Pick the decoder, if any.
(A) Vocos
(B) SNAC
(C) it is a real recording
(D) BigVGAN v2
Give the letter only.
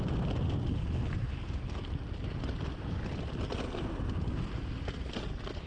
C